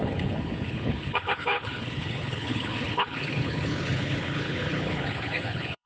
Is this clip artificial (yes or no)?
yes